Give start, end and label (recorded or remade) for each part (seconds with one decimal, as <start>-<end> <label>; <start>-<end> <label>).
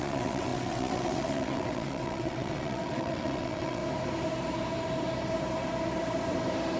0.0-3.8 remade; 3.8-6.8 recorded